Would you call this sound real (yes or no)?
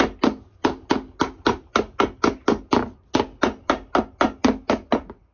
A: yes